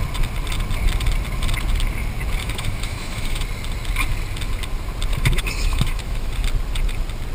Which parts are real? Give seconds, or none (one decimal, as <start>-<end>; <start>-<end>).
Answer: 0.0-2.4; 3.4-5.1; 6.3-7.3